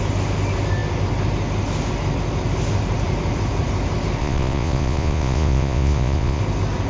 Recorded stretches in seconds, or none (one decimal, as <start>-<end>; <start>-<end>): 0.0-4.2; 6.4-6.9